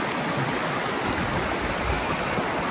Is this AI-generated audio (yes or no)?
no